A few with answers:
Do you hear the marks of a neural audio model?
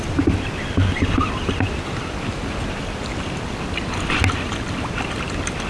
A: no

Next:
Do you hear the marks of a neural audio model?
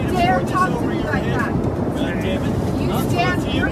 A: no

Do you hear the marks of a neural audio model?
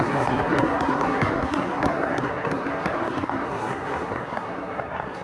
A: yes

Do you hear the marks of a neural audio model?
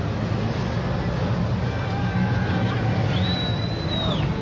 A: no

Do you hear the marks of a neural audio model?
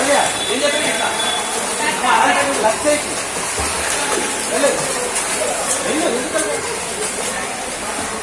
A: no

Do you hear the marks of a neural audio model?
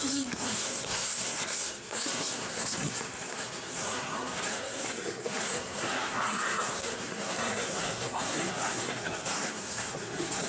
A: yes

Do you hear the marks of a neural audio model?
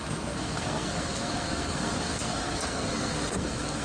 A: yes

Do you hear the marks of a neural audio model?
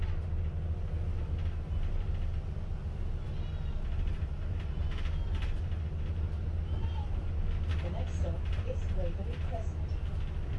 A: no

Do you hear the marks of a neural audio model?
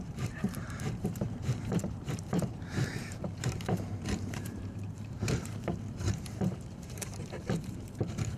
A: yes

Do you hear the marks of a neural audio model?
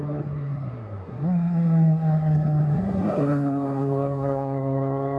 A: yes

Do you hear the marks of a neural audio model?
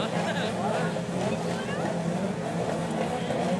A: no